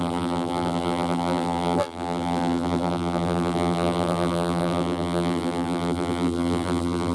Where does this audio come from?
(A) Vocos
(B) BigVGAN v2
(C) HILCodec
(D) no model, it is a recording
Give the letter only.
B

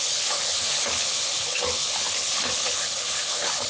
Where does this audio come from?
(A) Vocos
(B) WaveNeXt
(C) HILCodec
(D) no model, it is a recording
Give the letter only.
C